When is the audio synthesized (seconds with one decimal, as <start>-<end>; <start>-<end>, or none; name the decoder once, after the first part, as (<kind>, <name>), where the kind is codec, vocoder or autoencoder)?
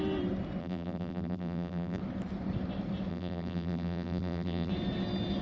0.6-2.0 (vocoder, BigVGAN v2); 3.1-4.7